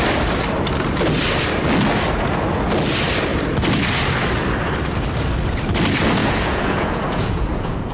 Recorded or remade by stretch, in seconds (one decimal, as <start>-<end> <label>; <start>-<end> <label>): 0.0-6.2 recorded; 6.2-7.9 remade